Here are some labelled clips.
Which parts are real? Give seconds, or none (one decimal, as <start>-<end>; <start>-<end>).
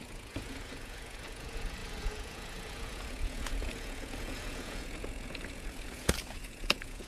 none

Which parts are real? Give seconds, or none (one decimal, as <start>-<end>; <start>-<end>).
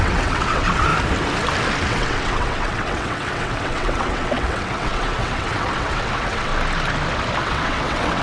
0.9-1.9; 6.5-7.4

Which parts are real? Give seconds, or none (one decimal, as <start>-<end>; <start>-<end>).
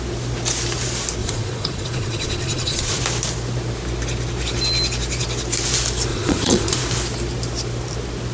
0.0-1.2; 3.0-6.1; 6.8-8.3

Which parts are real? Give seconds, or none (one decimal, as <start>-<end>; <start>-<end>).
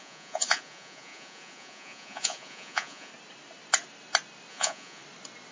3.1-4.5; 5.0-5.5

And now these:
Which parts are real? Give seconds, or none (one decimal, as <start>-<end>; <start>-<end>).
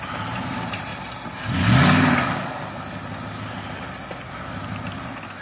0.0-5.4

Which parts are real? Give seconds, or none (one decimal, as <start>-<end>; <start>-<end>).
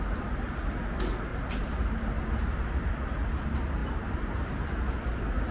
0.0-1.3; 2.1-3.8; 4.8-5.5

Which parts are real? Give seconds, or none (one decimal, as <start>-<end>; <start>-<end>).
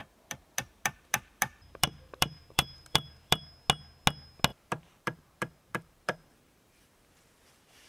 3.4-4.5; 7.1-7.9